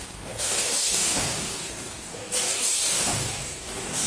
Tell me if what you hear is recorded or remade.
remade